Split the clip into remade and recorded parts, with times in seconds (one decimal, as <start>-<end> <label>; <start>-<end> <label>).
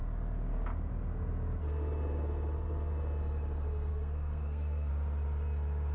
0.0-3.9 recorded; 3.9-4.9 remade; 4.9-5.9 recorded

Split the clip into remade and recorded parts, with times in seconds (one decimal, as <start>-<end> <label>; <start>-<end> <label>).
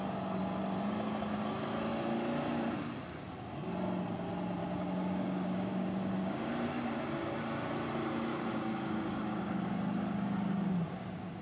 0.0-4.6 recorded; 4.6-6.5 remade; 6.5-8.3 recorded; 8.3-9.7 remade; 9.7-11.4 recorded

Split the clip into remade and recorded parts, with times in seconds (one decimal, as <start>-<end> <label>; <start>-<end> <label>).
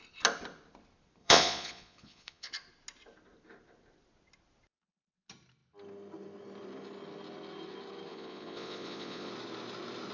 0.0-1.2 recorded; 1.2-2.5 remade; 2.5-8.1 recorded; 8.1-9.3 remade; 9.3-10.1 recorded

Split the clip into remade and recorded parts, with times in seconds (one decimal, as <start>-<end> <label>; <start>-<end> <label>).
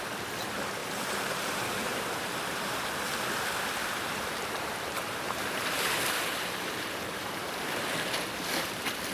0.0-0.8 recorded; 0.8-2.3 remade; 2.3-3.8 recorded; 3.8-7.5 remade; 7.5-9.1 recorded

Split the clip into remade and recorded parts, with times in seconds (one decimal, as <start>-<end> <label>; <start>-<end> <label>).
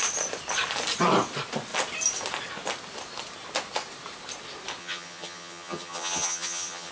0.0-4.8 recorded; 4.8-6.9 remade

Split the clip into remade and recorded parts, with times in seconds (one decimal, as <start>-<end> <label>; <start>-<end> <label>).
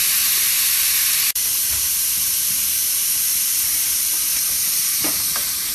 0.0-4.3 remade; 4.3-4.9 recorded; 4.9-5.7 remade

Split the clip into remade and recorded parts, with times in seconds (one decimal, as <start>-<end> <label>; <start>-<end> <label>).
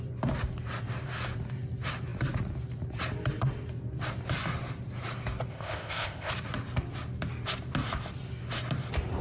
0.0-5.5 recorded; 5.5-6.3 remade; 6.3-9.2 recorded